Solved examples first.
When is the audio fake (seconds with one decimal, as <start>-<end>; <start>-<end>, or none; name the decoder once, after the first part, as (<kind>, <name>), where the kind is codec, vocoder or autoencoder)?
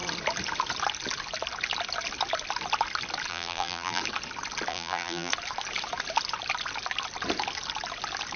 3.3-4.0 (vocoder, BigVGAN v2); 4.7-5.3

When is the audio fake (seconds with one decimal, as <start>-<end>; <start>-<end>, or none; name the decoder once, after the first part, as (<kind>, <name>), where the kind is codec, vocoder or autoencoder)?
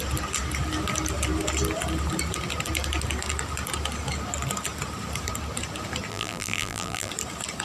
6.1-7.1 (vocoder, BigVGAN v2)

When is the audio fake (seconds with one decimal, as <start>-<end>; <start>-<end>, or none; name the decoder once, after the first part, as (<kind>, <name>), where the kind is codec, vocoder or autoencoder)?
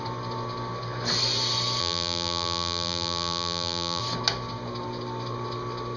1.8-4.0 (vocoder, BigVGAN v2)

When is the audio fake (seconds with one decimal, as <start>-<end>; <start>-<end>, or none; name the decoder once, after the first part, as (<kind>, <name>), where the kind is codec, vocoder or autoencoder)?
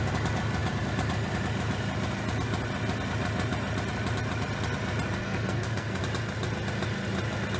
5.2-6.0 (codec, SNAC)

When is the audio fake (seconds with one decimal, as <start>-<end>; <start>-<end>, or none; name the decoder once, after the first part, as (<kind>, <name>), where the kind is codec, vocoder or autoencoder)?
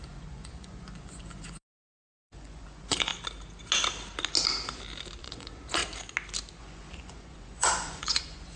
0.0-3.1 (vocoder, Vocos); 5.2-5.8; 6.6-8.6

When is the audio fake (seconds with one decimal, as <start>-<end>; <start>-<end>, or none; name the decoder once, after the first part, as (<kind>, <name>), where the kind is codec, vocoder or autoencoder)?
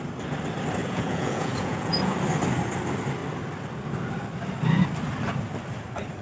0.8-2.2 (vocoder, Vocos)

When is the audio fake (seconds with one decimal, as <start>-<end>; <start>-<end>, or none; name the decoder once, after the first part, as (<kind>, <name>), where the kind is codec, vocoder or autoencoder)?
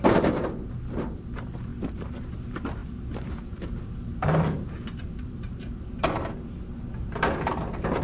0.0-8.0 (vocoder, BigVGAN v2)